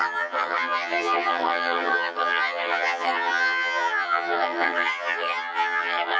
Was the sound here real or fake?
fake